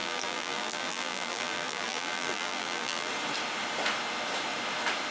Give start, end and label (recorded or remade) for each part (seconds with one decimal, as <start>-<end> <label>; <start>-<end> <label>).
0.0-3.1 remade; 3.1-5.1 recorded